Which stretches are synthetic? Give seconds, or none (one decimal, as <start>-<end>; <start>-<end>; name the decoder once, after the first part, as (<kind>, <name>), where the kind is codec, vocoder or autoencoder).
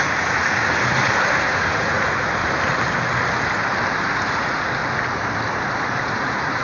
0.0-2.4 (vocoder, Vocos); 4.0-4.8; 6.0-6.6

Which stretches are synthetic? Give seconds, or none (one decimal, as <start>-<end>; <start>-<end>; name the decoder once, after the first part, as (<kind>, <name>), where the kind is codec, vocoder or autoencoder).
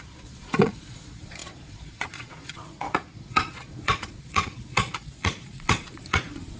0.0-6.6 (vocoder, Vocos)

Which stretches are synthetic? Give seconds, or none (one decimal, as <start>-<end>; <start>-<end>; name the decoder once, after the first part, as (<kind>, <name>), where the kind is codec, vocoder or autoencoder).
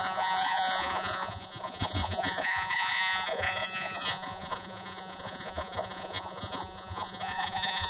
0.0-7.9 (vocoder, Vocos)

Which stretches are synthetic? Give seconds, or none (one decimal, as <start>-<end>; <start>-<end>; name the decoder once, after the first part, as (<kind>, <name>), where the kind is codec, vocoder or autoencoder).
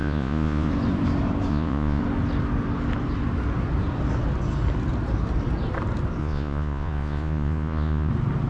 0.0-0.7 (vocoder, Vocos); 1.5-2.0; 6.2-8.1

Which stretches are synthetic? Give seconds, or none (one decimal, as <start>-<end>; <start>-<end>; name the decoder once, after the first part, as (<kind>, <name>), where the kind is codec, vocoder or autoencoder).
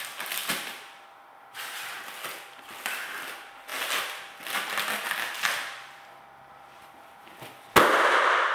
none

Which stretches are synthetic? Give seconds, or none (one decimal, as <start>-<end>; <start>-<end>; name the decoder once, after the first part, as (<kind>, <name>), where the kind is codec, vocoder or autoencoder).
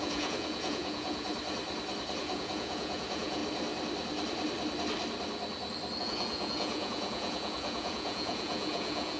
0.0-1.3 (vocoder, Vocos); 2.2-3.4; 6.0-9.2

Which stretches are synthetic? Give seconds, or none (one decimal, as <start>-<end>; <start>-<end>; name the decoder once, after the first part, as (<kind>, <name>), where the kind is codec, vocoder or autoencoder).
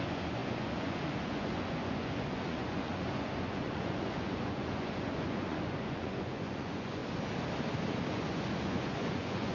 0.0-7.0 (vocoder, Vocos); 8.1-9.5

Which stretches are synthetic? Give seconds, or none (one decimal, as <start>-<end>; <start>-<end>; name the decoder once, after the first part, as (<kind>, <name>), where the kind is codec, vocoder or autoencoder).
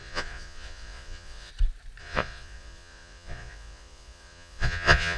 0.0-1.5 (vocoder, Vocos); 2.0-5.2